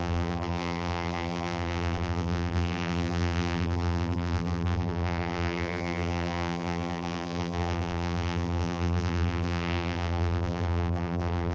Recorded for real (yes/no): no